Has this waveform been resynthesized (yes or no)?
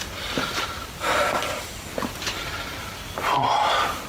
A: no